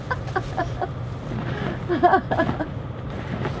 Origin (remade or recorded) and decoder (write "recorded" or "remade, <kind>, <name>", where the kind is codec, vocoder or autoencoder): recorded